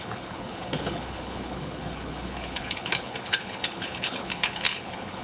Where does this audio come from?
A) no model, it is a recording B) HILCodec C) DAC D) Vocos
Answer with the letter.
B